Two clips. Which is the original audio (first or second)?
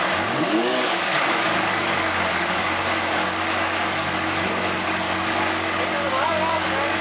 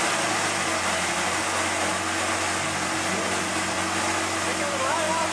second